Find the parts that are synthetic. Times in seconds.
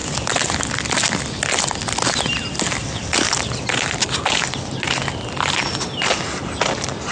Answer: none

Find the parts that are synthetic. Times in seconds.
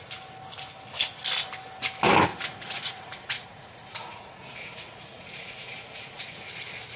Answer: 2.3-6.5 (vocoder, Vocos)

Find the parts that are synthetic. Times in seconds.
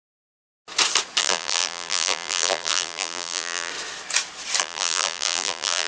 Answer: 1.2-3.7 (vocoder, BigVGAN v2); 4.6-5.9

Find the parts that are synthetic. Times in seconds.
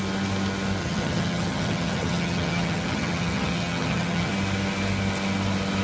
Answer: 0.8-4.3 (vocoder, HiFi-GAN)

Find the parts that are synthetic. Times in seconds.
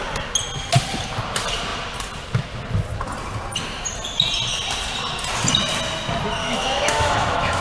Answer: 6.4-7.6 (autoencoder, DAC-VAE)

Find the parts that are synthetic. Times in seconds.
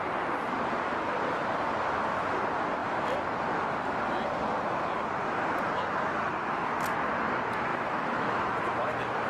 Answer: 7.7-8.4 (autoencoder, DAC-VAE)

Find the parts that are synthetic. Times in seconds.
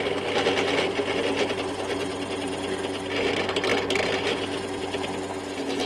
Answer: none